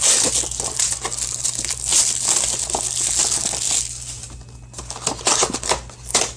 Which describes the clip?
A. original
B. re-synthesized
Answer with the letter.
A